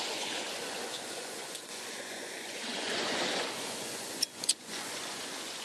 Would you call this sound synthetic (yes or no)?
yes